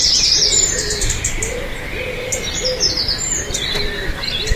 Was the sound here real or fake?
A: fake